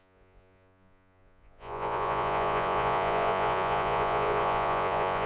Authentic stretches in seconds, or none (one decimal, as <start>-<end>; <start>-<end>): none